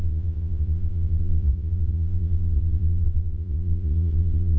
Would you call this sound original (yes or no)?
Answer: no